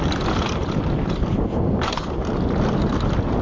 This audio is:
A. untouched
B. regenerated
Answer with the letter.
A